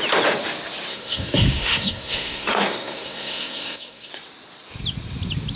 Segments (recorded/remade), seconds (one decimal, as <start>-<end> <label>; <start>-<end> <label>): 0.0-0.9 recorded; 0.9-4.1 remade; 4.1-5.6 recorded